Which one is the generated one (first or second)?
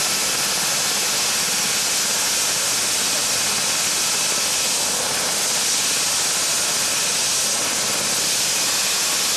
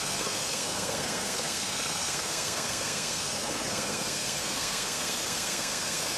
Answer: second